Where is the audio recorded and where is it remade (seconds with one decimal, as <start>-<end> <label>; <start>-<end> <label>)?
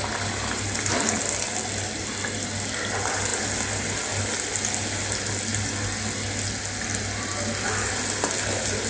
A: 0.0-8.9 recorded